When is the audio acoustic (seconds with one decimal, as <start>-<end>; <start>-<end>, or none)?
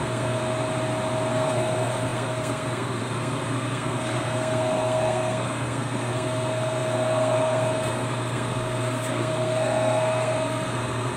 0.4-1.3